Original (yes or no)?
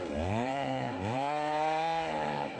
no